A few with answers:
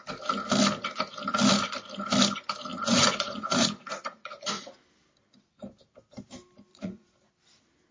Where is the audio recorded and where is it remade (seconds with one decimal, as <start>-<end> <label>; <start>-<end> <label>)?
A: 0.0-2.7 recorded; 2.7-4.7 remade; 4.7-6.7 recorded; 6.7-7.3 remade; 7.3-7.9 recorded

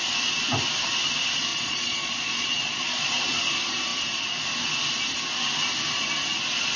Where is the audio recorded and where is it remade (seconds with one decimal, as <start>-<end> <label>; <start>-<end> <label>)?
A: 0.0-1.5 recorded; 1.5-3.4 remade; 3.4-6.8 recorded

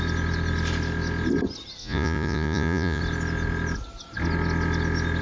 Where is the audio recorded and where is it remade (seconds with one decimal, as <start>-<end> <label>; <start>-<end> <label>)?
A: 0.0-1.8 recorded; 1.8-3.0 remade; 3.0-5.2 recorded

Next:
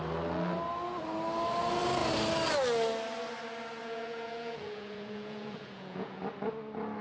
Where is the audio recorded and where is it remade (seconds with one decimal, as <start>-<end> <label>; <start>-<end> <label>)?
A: 0.0-3.8 recorded; 3.8-6.2 remade; 6.2-7.0 recorded